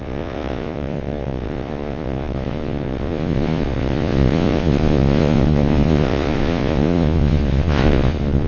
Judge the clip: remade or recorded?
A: remade